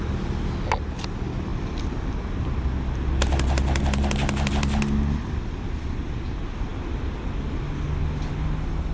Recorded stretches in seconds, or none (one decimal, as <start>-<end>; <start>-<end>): 0.0-8.9